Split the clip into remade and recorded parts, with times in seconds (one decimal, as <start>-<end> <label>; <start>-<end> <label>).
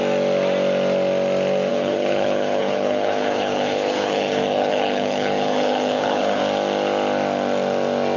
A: 0.0-1.7 recorded; 1.7-6.4 remade; 6.4-8.2 recorded